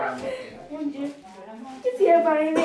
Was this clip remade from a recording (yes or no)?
no